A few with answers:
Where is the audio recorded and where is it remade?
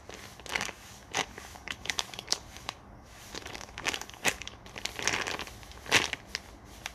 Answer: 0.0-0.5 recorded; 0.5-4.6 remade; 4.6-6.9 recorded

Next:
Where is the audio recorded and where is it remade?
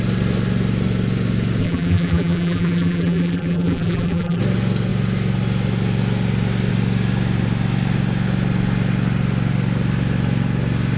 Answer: 0.0-1.6 recorded; 1.6-4.4 remade; 4.4-11.0 recorded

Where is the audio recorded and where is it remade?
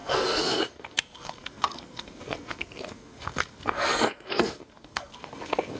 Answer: 0.0-5.8 remade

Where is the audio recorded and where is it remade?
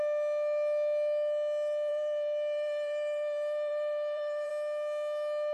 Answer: 0.0-1.9 recorded; 1.9-4.5 remade; 4.5-5.5 recorded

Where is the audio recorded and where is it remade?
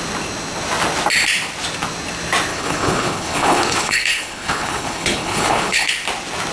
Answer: 0.0-2.5 recorded; 2.5-5.9 remade; 5.9-6.5 recorded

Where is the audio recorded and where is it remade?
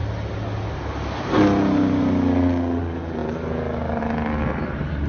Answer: 0.0-5.1 recorded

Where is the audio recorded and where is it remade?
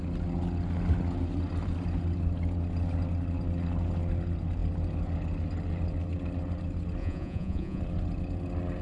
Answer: 0.0-7.0 recorded; 7.0-7.8 remade; 7.8-8.8 recorded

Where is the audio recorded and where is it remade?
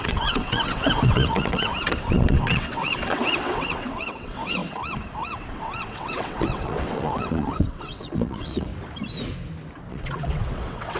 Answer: 0.0-8.7 remade; 8.7-9.9 recorded; 9.9-11.0 remade